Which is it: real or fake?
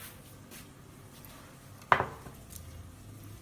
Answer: real